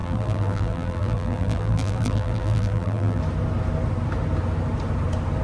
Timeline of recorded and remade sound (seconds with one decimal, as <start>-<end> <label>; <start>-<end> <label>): 0.0-3.2 remade; 3.2-5.4 recorded